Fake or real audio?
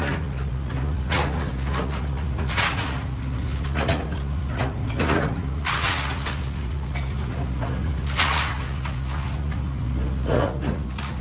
fake